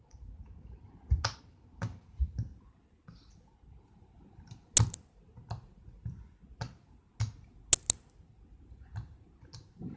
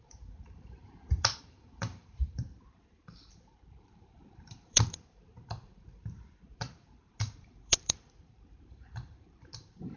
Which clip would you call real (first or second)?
first